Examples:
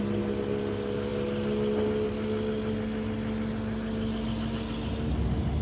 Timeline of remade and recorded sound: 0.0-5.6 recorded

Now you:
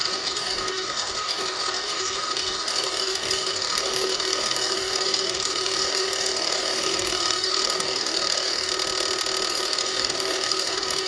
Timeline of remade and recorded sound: 0.0-8.7 remade; 8.7-9.5 recorded; 9.5-11.1 remade

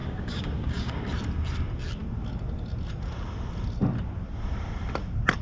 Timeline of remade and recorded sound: 0.0-1.0 remade; 1.0-5.4 recorded

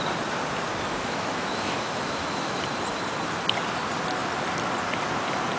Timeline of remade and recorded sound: 0.0-0.7 recorded; 0.7-2.6 remade; 2.6-5.6 recorded

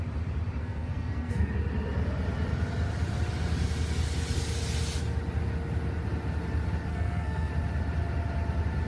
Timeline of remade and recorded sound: 0.0-0.6 recorded; 0.6-1.5 remade; 1.5-6.9 recorded; 6.9-7.5 remade; 7.5-8.9 recorded